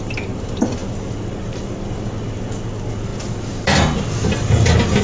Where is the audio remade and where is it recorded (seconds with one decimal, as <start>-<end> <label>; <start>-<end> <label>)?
0.0-5.0 recorded